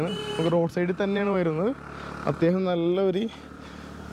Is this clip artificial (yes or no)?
yes